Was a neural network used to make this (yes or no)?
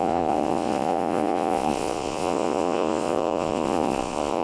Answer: yes